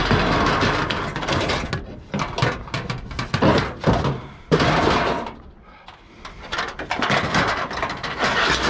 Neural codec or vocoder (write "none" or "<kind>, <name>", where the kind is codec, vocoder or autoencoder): none